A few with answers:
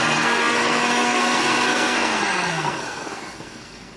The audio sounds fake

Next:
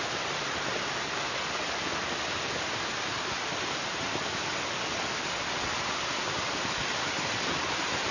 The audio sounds real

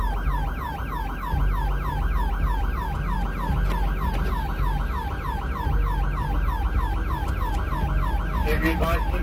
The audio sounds real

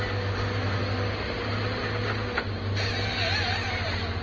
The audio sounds real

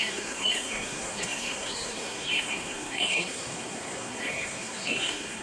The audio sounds fake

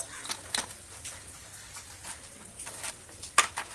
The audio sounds real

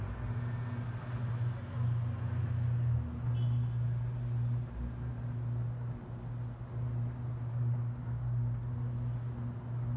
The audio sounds real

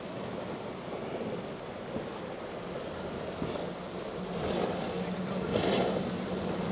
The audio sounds real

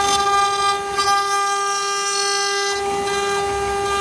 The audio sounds real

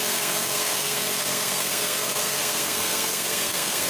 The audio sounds fake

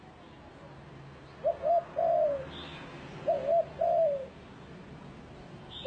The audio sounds real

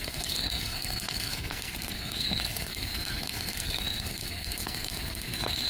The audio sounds fake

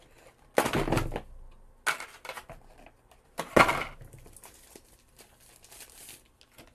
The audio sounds real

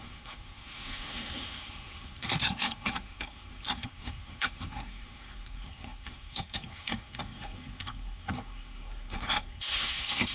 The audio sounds fake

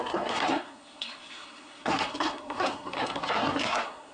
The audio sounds fake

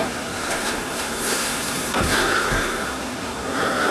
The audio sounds fake